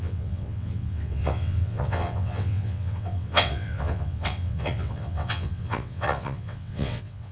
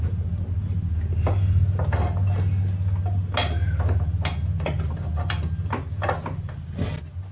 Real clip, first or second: second